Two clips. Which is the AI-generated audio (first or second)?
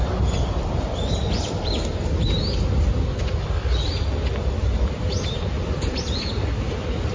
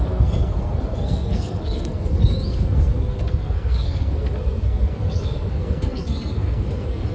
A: second